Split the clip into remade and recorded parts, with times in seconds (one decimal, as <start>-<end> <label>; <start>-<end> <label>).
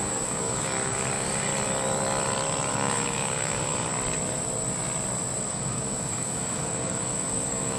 0.0-1.5 remade; 1.5-2.7 recorded; 2.7-3.9 remade; 3.9-5.5 recorded; 5.5-7.8 remade